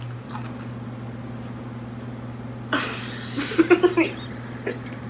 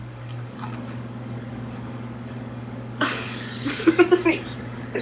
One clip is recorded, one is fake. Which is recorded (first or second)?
first